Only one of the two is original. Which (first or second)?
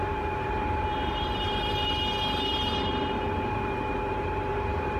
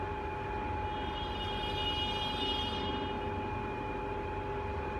second